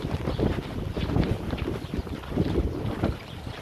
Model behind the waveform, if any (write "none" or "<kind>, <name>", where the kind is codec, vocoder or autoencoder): none